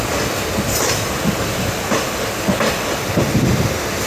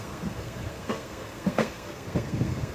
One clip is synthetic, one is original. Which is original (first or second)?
first